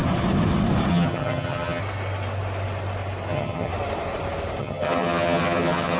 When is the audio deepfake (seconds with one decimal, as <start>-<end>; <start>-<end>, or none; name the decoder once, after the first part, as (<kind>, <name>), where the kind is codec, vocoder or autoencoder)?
0.9-1.8 (vocoder, HiFi-GAN); 3.3-3.7; 4.6-6.0